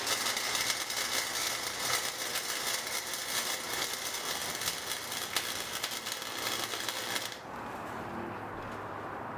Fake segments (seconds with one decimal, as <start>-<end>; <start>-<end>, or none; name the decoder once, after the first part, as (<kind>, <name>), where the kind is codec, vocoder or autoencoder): none